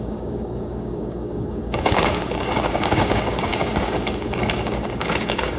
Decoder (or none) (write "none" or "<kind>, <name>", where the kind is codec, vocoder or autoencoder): codec, DAC